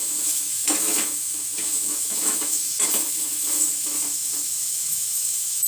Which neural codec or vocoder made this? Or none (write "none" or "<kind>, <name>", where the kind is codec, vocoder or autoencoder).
autoencoder, DAC-VAE